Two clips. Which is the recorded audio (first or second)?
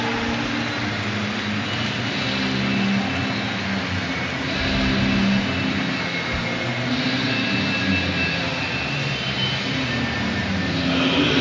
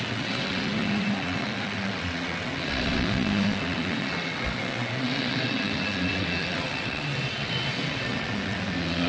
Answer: first